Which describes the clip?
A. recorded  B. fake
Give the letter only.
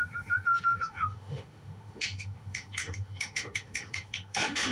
B